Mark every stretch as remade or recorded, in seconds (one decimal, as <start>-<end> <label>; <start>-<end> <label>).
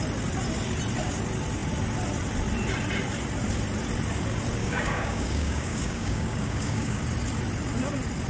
0.0-4.6 recorded; 4.6-7.0 remade; 7.0-8.3 recorded